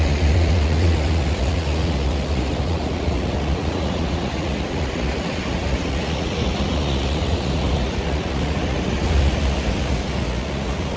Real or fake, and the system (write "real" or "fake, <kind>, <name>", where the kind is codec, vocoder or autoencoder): fake, vocoder, Vocos